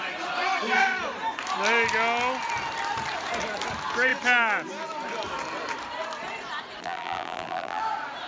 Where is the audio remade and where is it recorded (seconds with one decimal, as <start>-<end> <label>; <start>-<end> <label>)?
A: 0.0-6.8 recorded; 6.8-7.8 remade; 7.8-8.3 recorded